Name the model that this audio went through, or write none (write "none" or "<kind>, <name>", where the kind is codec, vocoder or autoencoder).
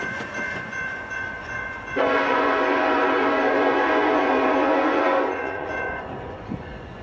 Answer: vocoder, Vocos